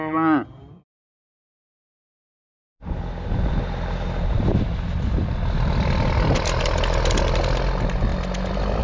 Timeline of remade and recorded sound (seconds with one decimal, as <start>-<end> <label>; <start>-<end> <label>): 0.0-8.8 recorded

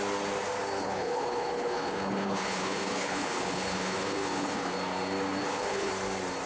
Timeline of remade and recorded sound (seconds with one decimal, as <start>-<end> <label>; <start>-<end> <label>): 0.0-0.8 recorded; 0.8-4.7 remade; 4.7-5.4 recorded; 5.4-5.9 remade; 5.9-6.5 recorded

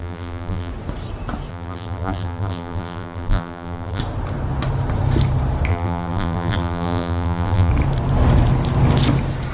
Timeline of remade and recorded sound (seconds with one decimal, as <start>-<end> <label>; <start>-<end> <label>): 0.0-0.7 remade; 0.7-1.5 recorded; 1.5-4.0 remade; 4.0-5.7 recorded; 5.7-7.7 remade; 7.7-9.5 recorded

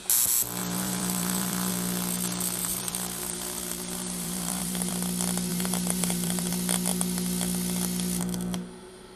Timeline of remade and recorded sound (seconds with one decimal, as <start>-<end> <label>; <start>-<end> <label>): 0.0-0.6 recorded; 0.6-1.7 remade; 1.7-2.6 recorded; 2.6-4.9 remade; 4.9-5.5 recorded; 5.5-6.5 remade; 6.5-9.2 recorded

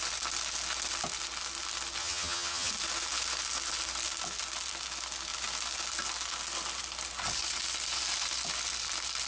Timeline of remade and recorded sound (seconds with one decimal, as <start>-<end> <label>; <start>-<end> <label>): 0.0-2.0 recorded; 2.0-2.7 remade; 2.7-9.3 recorded

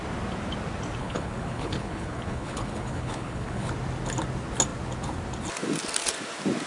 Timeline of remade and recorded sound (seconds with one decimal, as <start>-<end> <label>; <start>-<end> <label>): 0.0-1.0 recorded; 1.0-3.7 remade; 3.7-6.7 recorded

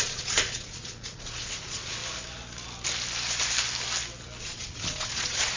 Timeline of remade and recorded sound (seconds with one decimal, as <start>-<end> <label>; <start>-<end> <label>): 0.0-2.0 remade; 2.0-4.4 recorded; 4.4-5.6 remade

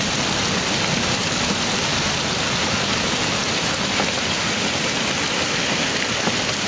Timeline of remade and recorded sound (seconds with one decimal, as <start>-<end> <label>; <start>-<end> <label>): 0.0-1.9 remade; 1.9-3.5 recorded; 3.5-6.7 remade